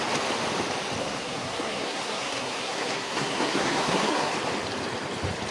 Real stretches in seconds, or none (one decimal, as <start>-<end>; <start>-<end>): 0.0-1.0; 4.3-5.5